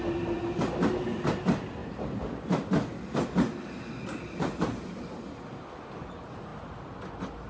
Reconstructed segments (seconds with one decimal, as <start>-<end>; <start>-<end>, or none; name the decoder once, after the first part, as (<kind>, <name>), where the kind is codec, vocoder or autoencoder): 1.8-4.6 (vocoder, BigVGAN v2)